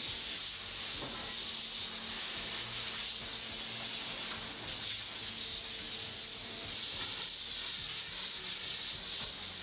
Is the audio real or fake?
real